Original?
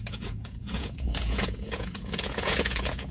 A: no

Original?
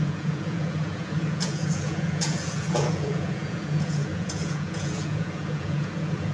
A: no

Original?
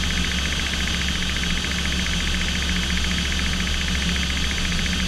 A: yes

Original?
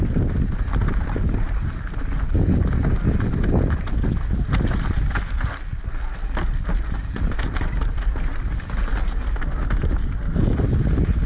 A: yes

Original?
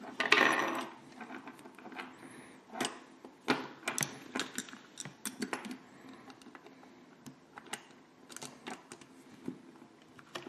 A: yes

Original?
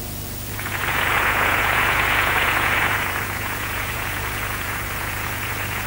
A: no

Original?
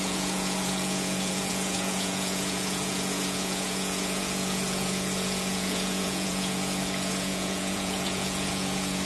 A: no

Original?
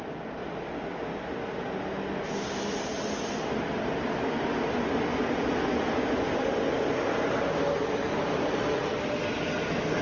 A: yes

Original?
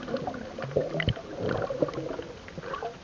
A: yes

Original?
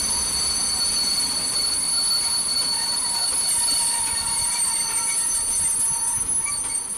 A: yes